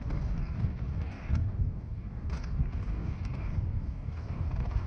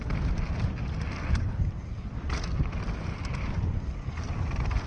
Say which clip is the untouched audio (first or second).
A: second